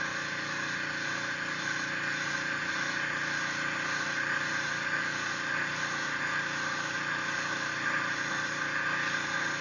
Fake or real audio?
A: real